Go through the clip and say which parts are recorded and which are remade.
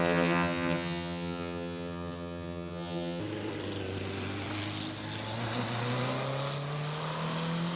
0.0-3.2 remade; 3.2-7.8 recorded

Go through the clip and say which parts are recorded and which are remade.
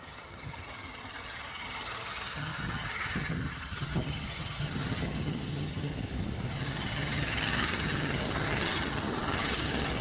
0.0-5.9 remade; 5.9-6.5 recorded; 6.5-10.0 remade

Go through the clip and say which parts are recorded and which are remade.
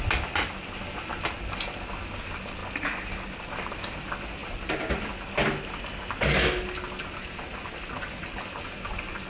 0.0-9.3 recorded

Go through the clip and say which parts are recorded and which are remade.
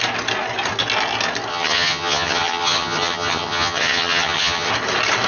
0.0-1.5 recorded; 1.5-4.7 remade; 4.7-5.3 recorded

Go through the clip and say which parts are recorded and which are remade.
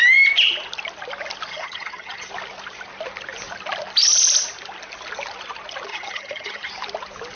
0.0-1.5 recorded; 1.5-2.3 remade; 2.3-5.9 recorded; 5.9-6.7 remade; 6.7-7.4 recorded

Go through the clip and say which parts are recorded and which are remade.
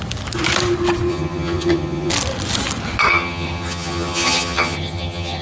0.0-1.1 recorded; 1.1-2.1 remade; 2.1-3.1 recorded; 3.1-5.4 remade